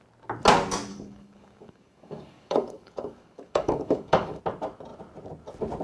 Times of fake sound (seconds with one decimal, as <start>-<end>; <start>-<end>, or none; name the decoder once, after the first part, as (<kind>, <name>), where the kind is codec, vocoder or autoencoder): 0.9-4.4 (codec, DAC)